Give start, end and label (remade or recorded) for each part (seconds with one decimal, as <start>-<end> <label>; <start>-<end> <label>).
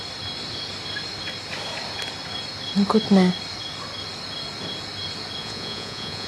0.0-5.4 recorded; 5.4-6.3 remade